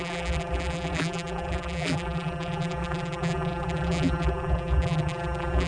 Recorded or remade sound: remade